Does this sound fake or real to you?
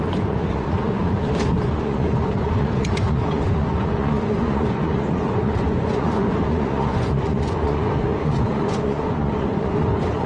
fake